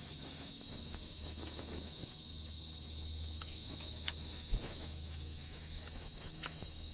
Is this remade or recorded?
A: remade